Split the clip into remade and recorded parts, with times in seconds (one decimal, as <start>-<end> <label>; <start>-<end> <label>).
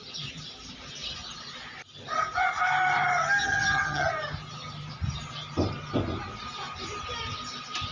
0.0-3.4 recorded; 3.4-4.1 remade; 4.1-7.9 recorded